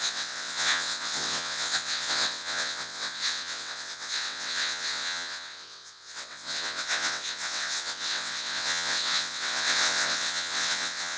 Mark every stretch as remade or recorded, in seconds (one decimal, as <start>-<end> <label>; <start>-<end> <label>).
0.0-11.2 remade